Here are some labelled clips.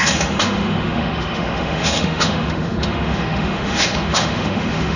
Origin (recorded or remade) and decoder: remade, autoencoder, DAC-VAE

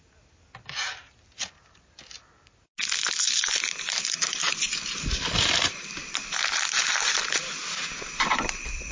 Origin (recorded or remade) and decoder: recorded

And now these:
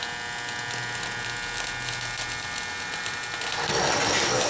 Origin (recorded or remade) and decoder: recorded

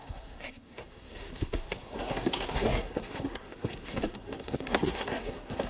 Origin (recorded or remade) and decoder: remade, codec, SNAC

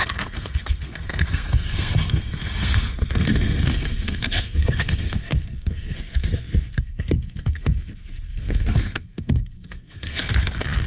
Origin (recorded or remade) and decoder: remade, codec, SNAC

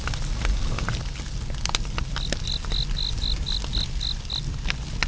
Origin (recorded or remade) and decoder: recorded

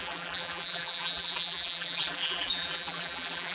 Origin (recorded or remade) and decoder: remade, vocoder, BigVGAN v2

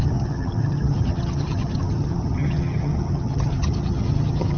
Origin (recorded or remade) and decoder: remade, vocoder, HiFi-GAN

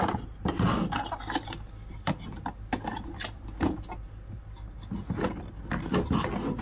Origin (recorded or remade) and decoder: recorded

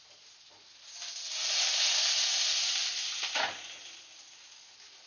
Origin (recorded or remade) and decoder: recorded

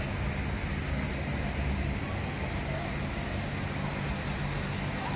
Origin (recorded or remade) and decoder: recorded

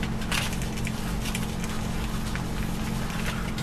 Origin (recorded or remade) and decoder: recorded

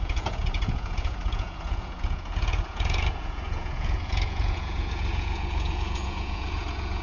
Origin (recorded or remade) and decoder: remade, vocoder, Vocos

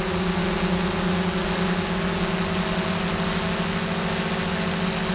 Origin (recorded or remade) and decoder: recorded